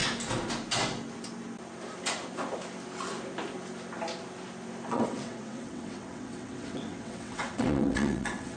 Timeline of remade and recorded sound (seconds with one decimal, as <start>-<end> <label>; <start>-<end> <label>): 0.0-4.9 recorded; 4.9-8.6 remade